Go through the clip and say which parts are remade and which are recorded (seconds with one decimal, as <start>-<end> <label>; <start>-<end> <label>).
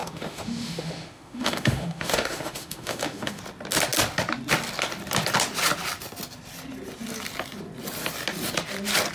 0.0-3.4 remade; 3.4-9.1 recorded